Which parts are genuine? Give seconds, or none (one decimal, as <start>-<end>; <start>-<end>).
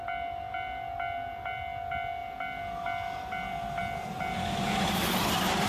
0.0-5.7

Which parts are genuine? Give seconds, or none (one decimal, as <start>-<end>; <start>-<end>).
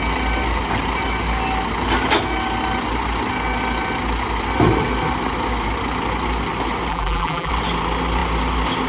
0.0-6.9; 7.5-8.9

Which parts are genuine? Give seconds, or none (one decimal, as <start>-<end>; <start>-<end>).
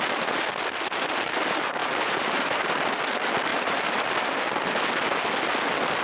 0.0-1.8; 3.1-3.5; 4.1-6.0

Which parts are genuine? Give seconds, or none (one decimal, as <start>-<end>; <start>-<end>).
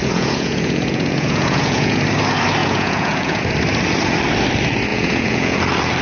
2.0-2.6; 3.4-4.9; 5.6-6.0